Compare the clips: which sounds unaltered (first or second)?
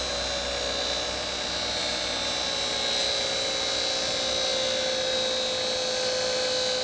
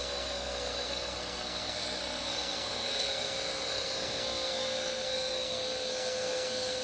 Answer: first